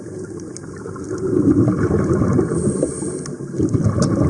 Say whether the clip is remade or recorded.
recorded